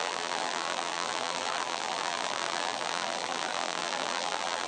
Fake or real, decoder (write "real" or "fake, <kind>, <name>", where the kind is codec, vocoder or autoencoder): fake, vocoder, BigVGAN v2